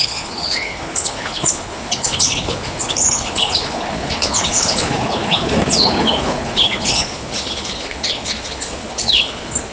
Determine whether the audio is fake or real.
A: fake